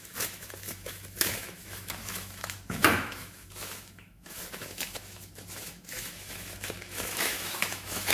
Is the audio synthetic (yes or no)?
yes